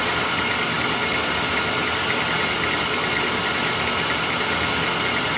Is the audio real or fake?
real